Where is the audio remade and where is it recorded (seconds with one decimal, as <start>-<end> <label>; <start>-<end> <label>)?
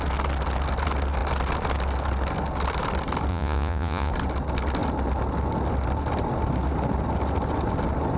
0.0-3.3 recorded; 3.3-4.1 remade; 4.1-8.2 recorded